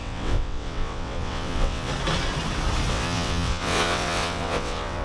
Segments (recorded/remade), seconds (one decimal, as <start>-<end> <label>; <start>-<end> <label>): 0.0-1.9 remade; 1.9-2.9 recorded; 2.9-5.0 remade